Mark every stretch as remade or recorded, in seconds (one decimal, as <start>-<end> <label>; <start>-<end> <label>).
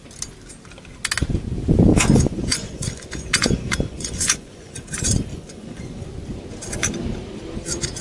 0.0-1.9 recorded; 1.9-4.8 remade; 4.8-5.3 recorded; 5.3-6.0 remade; 6.0-8.0 recorded